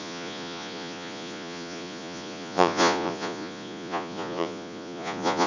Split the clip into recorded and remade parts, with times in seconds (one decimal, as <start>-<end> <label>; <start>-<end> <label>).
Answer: 0.0-5.5 remade